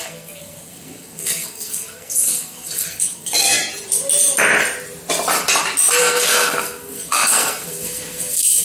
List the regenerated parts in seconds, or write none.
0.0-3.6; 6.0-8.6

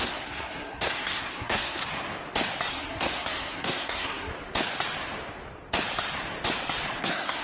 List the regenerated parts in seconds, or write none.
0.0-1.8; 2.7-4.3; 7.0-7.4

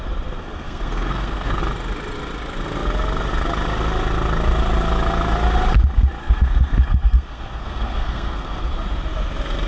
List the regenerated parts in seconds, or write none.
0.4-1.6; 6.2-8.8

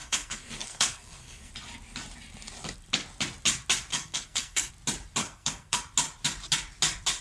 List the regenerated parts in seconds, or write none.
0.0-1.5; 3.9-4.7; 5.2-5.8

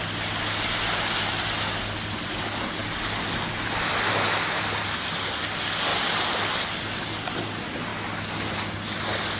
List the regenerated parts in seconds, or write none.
none